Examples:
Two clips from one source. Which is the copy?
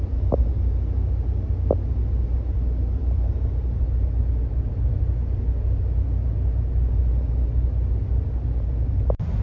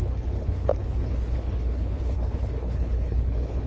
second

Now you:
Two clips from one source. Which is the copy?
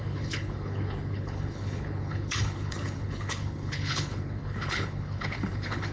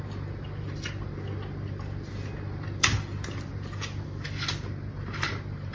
first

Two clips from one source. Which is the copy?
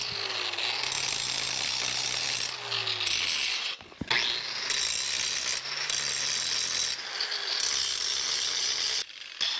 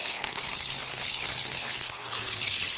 second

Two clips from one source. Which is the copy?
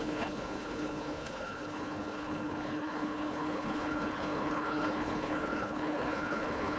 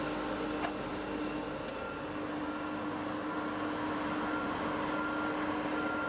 first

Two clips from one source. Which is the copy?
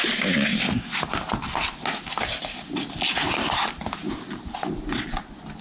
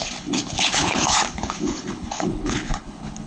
second